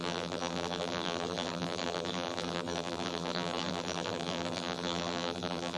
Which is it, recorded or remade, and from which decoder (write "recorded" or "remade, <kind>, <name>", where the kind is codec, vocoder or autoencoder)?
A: remade, vocoder, BigVGAN v2